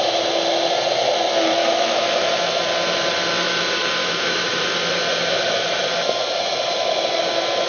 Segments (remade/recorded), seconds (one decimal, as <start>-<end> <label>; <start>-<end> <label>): 0.0-1.6 recorded; 1.6-2.6 remade; 2.6-4.0 recorded; 4.0-4.6 remade; 4.6-7.7 recorded